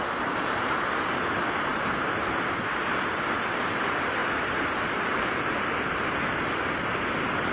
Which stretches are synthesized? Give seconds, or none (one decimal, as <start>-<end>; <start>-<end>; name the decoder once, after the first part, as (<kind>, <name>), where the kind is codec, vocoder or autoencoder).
none